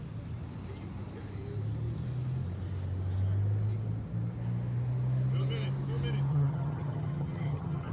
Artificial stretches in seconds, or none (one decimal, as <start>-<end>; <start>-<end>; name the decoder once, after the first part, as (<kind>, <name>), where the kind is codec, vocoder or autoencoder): 6.3-7.9 (vocoder, HiFi-GAN)